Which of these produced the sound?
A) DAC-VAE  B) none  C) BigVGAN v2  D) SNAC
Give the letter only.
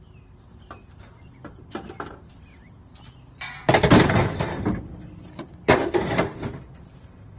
B